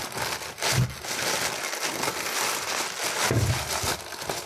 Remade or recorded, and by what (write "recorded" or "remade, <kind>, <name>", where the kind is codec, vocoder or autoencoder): recorded